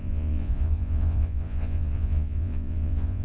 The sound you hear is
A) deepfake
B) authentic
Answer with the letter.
A